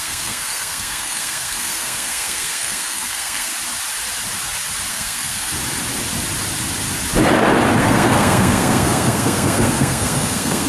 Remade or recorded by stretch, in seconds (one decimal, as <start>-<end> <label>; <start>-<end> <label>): 0.0-3.5 remade; 3.5-4.9 recorded; 4.9-5.5 remade; 5.5-7.8 recorded; 7.8-10.7 remade